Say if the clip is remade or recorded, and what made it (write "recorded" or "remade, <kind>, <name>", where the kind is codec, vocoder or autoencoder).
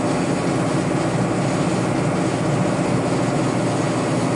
recorded